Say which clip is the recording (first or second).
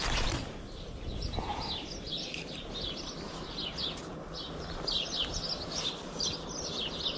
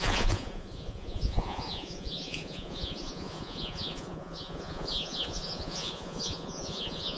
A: first